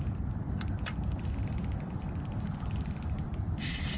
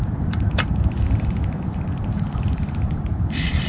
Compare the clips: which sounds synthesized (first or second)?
second